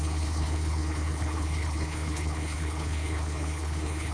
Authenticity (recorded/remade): remade